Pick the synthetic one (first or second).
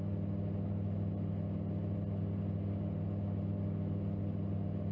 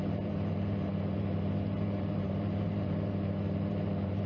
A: second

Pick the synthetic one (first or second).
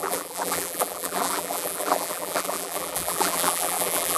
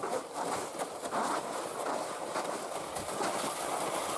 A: first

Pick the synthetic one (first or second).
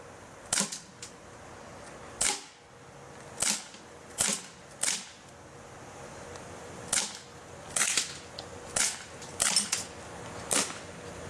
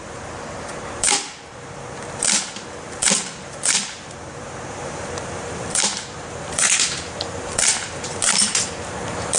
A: second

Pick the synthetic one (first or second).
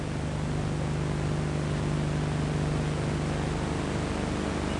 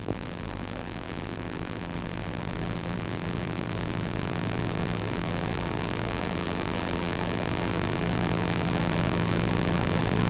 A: second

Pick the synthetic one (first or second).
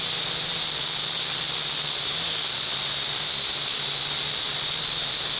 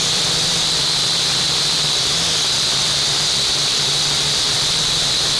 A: second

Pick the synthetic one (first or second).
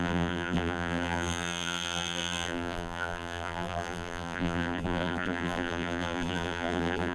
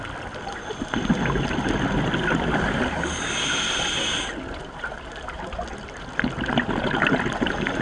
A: first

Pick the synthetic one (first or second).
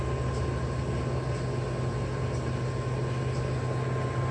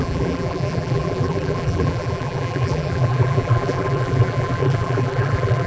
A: second